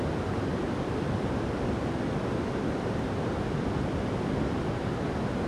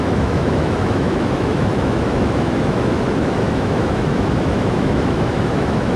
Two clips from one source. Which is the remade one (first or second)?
second